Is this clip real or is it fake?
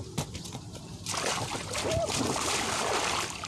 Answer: real